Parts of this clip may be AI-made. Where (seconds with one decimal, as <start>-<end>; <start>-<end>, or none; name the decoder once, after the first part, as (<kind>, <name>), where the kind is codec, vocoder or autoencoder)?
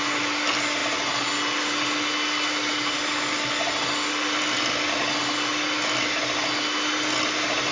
none